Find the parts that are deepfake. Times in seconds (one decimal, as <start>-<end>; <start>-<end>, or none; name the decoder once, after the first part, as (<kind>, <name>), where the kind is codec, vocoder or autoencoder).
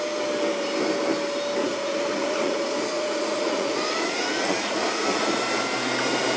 1.6-5.4 (vocoder, Vocos)